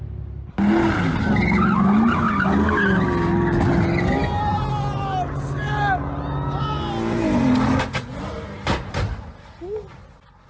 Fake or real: real